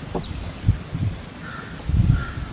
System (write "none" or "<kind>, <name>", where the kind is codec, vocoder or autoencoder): none